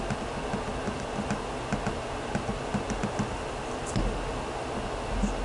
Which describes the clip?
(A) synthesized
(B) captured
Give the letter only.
B